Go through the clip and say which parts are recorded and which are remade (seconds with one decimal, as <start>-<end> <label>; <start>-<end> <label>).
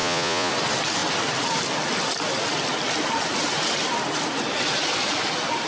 0.0-0.5 remade; 0.5-5.7 recorded